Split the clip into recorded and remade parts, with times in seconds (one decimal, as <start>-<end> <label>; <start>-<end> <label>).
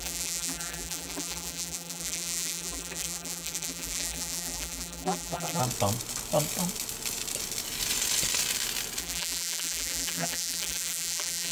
0.0-5.6 remade; 5.6-9.0 recorded; 9.0-11.5 remade